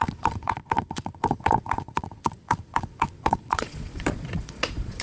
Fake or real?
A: fake